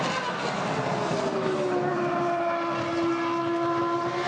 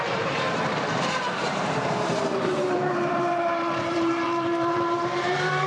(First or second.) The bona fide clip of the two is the first